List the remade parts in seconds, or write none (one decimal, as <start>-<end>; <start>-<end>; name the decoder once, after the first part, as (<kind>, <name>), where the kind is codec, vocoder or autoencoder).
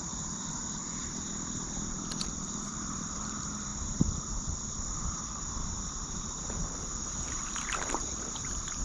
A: 0.0-8.8 (vocoder, BigVGAN v2)